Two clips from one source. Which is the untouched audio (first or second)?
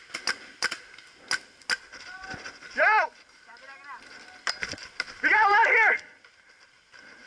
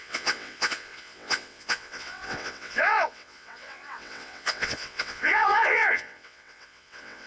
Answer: first